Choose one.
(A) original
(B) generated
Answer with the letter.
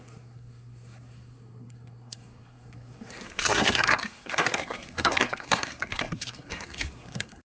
B